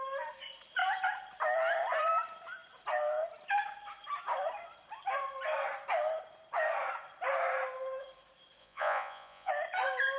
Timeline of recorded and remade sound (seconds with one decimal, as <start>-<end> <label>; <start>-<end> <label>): 0.0-8.6 recorded; 8.6-9.5 remade; 9.5-10.2 recorded